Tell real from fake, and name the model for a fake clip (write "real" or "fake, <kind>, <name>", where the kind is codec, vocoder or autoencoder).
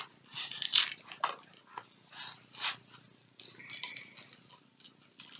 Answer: real